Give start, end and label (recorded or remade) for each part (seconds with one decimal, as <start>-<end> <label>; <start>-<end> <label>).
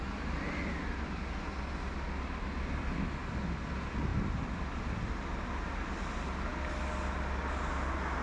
0.0-4.1 recorded; 4.1-5.1 remade; 5.1-8.2 recorded